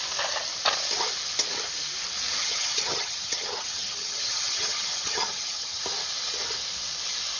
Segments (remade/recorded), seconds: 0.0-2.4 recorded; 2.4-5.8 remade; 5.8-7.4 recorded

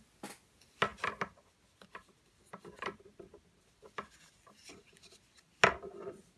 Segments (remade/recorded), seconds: 0.0-6.4 recorded

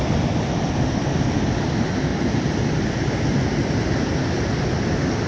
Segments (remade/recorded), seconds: 0.0-5.3 recorded

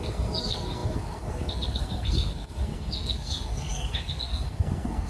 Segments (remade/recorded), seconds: 0.0-5.1 remade

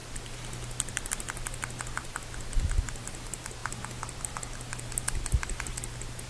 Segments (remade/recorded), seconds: 0.0-6.3 recorded